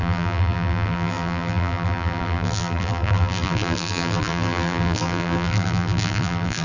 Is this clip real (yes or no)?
no